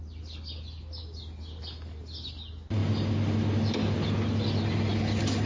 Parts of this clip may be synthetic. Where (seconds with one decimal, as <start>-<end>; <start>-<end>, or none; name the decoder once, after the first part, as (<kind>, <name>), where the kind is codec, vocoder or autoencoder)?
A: none